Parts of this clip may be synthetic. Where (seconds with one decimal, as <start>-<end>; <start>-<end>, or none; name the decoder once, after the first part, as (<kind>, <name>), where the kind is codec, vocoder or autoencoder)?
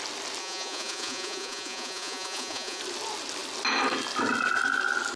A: 0.4-2.8 (vocoder, Vocos)